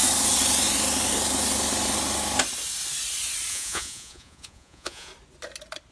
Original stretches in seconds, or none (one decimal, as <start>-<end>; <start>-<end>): 0.0-3.5; 5.1-5.9